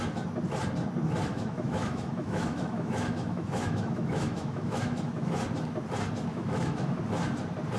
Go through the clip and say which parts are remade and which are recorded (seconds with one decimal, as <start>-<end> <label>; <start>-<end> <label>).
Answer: 0.0-1.3 recorded; 1.3-5.4 remade; 5.4-6.3 recorded; 6.3-7.0 remade; 7.0-7.8 recorded